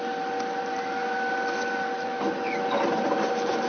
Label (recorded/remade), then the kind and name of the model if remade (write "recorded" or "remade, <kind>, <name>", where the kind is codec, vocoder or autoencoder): recorded